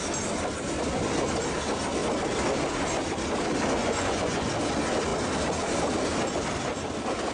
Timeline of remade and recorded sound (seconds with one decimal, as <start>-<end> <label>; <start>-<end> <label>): 0.0-3.8 recorded; 3.8-4.5 remade; 4.5-7.3 recorded

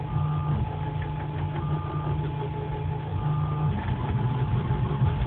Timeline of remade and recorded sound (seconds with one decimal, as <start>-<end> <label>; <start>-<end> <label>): 0.0-5.3 recorded

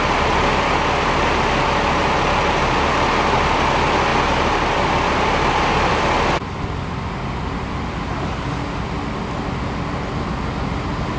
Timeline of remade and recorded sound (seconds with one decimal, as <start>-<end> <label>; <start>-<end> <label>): 0.0-11.2 recorded

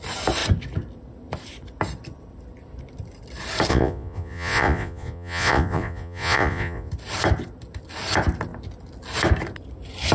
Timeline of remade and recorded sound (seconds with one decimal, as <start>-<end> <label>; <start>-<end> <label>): 0.0-3.7 recorded; 3.7-6.9 remade; 6.9-10.1 recorded

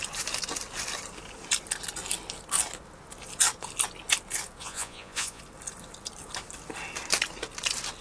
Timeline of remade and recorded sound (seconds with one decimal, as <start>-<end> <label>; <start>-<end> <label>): 0.0-4.6 recorded; 4.6-5.4 remade; 5.4-8.0 recorded

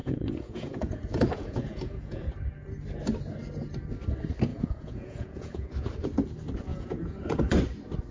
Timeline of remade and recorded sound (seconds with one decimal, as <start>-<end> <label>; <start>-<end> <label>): 0.0-2.3 remade; 2.3-4.5 recorded; 4.5-5.7 remade; 5.7-6.7 recorded; 6.7-7.6 remade; 7.6-8.1 recorded

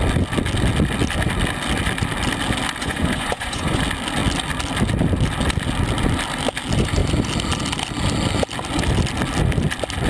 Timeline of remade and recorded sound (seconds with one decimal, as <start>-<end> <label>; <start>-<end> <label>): 0.0-2.8 recorded; 2.8-3.8 remade; 3.8-10.1 recorded